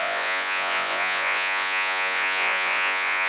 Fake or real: fake